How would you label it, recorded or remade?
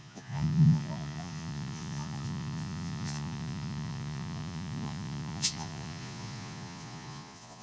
remade